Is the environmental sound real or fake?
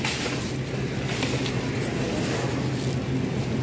real